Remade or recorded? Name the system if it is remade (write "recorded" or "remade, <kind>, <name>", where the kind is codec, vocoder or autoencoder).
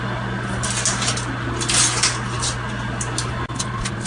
recorded